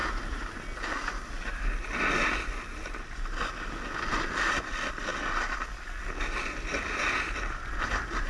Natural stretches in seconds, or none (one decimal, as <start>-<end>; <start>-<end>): 0.0-8.3